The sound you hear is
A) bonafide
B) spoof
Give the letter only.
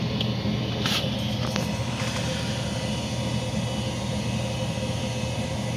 A